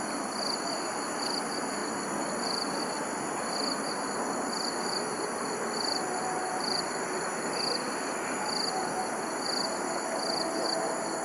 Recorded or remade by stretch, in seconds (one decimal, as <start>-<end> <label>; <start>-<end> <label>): 0.0-11.2 recorded